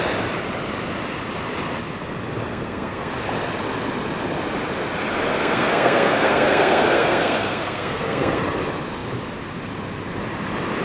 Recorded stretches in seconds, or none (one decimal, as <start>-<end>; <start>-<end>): 0.0-2.5; 3.1-5.3; 8.4-10.8